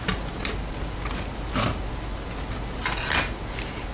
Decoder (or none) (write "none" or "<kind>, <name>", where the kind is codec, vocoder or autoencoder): none